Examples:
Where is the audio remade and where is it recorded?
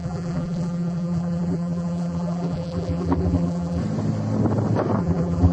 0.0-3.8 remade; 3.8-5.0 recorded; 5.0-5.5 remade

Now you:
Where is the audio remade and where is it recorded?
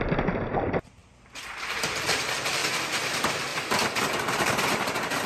0.0-1.0 remade; 1.0-1.6 recorded; 1.6-2.6 remade; 2.6-3.1 recorded; 3.1-3.5 remade; 3.5-4.2 recorded; 4.2-5.3 remade